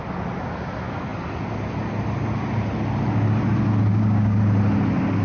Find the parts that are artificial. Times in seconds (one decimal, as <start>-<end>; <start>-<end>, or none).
3.9-4.4